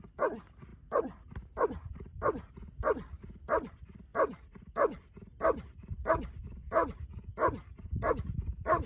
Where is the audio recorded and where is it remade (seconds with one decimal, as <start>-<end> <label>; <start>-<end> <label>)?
0.0-0.7 recorded; 0.7-2.5 remade; 2.5-4.1 recorded; 4.1-4.7 remade; 4.7-8.9 recorded